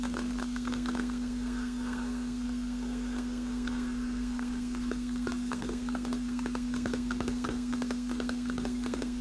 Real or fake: fake